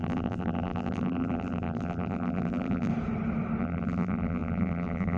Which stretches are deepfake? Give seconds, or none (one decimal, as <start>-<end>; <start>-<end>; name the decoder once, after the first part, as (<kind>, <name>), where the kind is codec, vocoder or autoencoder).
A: 0.0-2.9 (vocoder, BigVGAN v2); 3.6-5.2